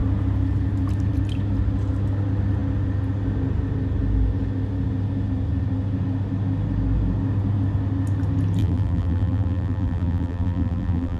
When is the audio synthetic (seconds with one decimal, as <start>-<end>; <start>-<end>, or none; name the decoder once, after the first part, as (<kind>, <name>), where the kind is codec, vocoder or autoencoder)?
8.6-11.2 (vocoder, BigVGAN v2)

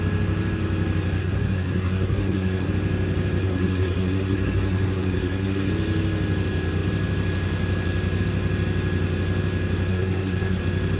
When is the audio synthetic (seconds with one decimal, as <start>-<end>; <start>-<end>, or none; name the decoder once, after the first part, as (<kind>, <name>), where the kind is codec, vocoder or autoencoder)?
1.2-2.7 (codec, SNAC); 3.4-5.7; 9.9-10.6

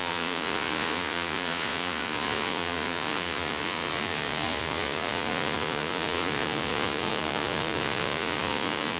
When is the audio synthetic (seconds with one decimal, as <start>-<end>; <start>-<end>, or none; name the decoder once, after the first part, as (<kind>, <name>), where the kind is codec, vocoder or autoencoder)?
0.0-9.0 (vocoder, Vocos)

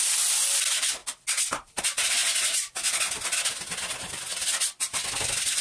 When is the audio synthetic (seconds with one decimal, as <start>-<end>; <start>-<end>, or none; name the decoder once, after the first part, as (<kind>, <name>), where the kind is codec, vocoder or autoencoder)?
none

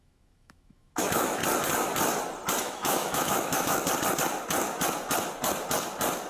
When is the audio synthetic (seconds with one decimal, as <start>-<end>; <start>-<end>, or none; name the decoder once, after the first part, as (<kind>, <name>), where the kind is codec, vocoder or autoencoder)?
0.0-1.4 (autoencoder, DAC-VAE); 2.6-3.8

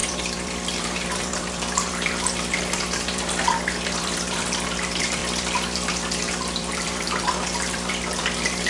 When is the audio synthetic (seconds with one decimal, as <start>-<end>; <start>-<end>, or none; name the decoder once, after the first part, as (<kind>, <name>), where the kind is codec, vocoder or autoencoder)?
0.0-8.7 (vocoder, BigVGAN v2)